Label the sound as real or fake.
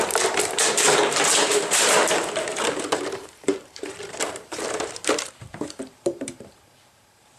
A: fake